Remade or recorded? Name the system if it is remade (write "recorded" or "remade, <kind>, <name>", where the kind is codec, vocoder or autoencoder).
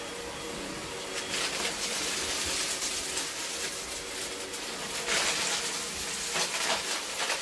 recorded